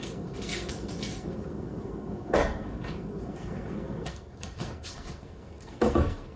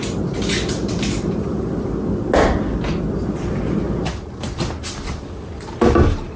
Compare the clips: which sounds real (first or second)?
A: second